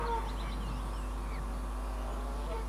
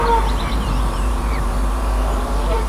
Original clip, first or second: first